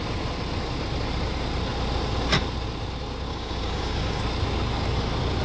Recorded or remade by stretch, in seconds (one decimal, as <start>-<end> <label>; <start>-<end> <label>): 0.0-3.3 recorded; 3.3-4.2 remade; 4.2-5.4 recorded